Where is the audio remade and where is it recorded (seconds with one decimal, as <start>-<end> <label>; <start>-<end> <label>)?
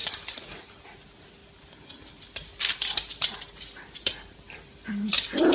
0.0-0.7 remade; 0.7-5.5 recorded